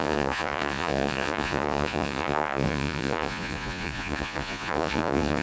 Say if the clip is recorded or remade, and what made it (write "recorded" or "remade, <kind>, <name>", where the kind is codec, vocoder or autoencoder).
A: remade, vocoder, Vocos